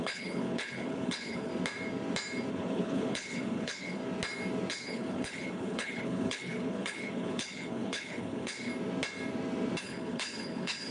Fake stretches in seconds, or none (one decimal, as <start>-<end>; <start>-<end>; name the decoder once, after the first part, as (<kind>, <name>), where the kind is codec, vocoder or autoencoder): 0.0-1.5 (codec, HILCodec); 2.5-4.0; 4.7-8.7; 9.8-10.9